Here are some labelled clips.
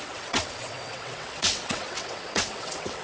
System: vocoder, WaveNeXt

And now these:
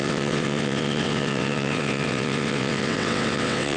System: vocoder, WaveNeXt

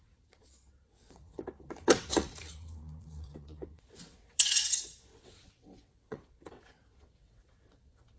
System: vocoder, WaveNeXt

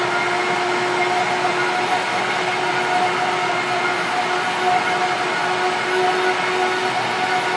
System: none